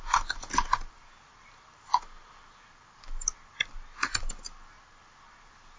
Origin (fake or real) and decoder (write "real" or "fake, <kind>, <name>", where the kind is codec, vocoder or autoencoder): real